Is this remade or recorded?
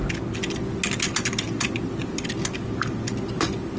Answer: recorded